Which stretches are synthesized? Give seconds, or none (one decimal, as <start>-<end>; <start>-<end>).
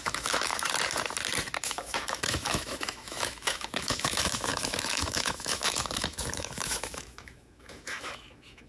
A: 0.0-0.5; 1.6-8.7